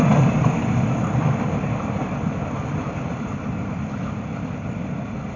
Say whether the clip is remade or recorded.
recorded